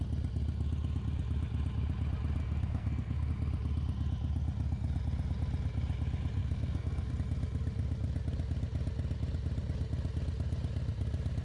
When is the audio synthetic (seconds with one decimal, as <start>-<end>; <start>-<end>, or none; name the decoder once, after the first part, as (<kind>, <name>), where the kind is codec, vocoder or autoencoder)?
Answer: 2.4-3.3 (codec, SNAC); 6.4-7.1

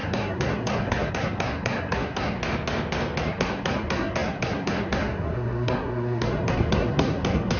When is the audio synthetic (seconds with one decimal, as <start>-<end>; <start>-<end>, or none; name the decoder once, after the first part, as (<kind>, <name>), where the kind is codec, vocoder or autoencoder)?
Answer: 0.0-2.4 (codec, SNAC); 3.2-7.6

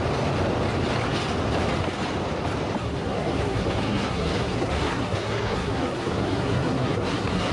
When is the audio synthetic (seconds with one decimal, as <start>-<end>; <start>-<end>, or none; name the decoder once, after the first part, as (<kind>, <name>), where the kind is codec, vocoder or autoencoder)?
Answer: 2.8-7.5 (codec, SNAC)